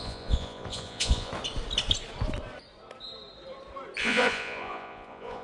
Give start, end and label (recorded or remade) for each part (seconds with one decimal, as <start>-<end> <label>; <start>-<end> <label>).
0.0-1.3 remade; 1.3-4.0 recorded; 4.0-5.4 remade